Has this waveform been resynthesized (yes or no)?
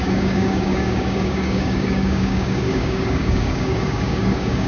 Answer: yes